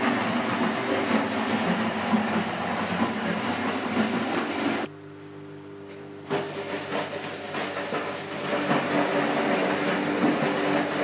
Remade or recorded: recorded